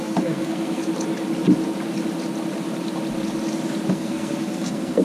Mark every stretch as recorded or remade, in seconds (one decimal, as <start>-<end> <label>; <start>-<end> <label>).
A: 0.0-0.9 remade; 0.9-3.9 recorded; 3.9-5.0 remade